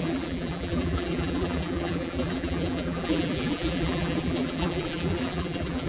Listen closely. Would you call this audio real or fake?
fake